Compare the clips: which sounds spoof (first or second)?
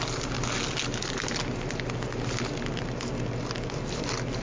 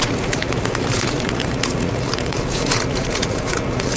second